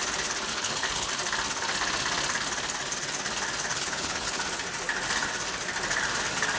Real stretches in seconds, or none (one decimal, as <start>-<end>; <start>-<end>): 0.0-0.5; 1.1-3.7; 4.4-6.6